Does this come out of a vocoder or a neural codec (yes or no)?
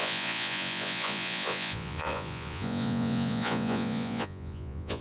yes